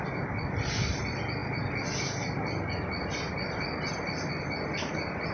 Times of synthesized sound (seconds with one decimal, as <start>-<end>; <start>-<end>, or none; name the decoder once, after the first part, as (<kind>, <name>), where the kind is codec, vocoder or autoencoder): none